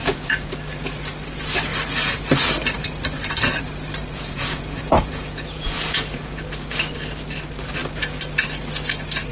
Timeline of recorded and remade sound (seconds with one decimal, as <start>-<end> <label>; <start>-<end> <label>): 0.0-0.5 remade; 0.5-4.1 recorded; 4.1-6.5 remade; 6.5-9.3 recorded